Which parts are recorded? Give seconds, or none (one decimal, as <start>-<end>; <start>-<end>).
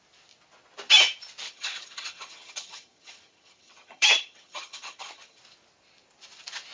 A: 0.0-1.4; 5.4-6.7